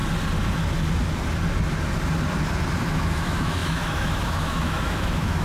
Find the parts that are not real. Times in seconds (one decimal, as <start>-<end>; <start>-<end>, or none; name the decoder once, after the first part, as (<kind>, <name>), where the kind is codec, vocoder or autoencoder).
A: 2.9-5.4 (autoencoder, DAC-VAE)